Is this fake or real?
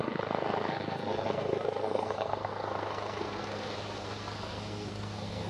fake